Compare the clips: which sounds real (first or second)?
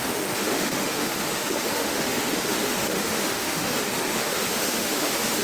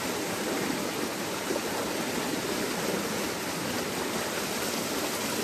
second